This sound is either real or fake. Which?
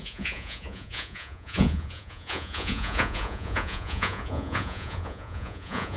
fake